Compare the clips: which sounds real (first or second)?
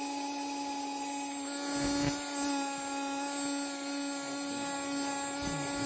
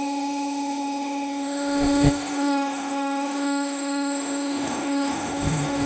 first